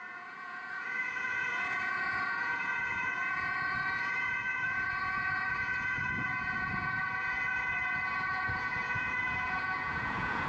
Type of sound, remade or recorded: remade